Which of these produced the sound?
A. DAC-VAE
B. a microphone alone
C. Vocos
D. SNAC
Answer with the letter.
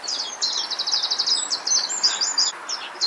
B